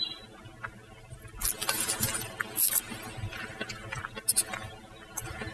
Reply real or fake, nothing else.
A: real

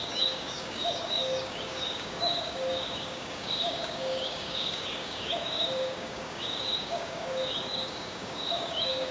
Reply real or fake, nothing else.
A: fake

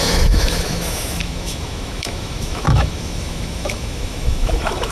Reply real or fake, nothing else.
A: fake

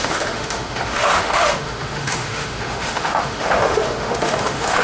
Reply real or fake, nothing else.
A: fake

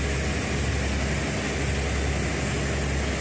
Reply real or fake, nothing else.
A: real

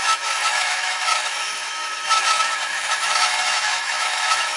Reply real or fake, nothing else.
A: fake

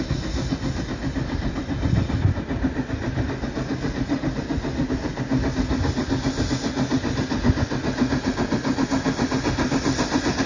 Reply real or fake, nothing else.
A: real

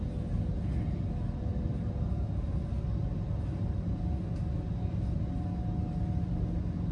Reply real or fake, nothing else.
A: real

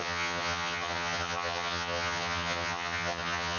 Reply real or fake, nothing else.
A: fake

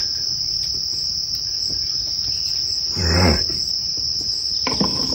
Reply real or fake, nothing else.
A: real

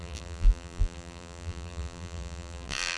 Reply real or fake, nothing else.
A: fake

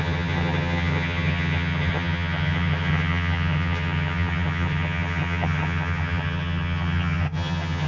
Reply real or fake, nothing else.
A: fake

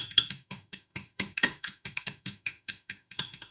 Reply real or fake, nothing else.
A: fake